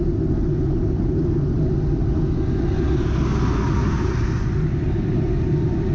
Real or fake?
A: real